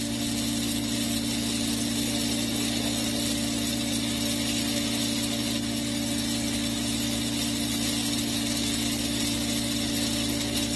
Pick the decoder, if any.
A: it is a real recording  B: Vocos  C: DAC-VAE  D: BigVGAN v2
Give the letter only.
A